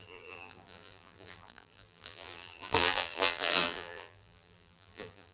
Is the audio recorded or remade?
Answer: remade